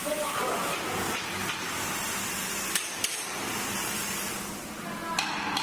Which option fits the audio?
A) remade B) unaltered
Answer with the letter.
B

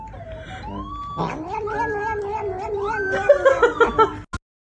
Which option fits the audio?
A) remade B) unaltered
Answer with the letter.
B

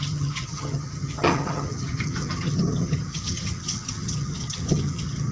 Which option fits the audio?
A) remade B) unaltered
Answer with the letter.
A